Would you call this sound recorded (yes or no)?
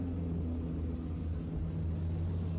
yes